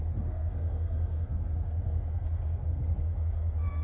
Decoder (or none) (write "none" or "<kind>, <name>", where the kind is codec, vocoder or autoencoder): codec, SNAC